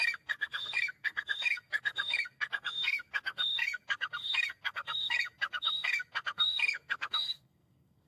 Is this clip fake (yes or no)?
yes